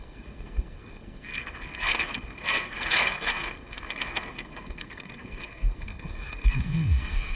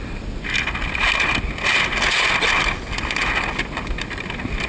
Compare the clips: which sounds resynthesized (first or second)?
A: first